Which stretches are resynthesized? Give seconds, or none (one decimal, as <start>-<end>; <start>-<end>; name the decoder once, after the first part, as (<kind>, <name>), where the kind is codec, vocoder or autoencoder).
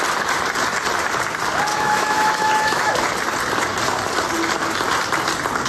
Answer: 1.7-2.9 (autoencoder, DAC-VAE)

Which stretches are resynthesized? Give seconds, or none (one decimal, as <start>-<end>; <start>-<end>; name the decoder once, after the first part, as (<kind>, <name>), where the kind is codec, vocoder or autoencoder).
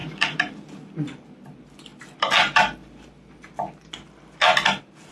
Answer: none